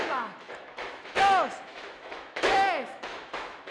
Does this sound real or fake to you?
fake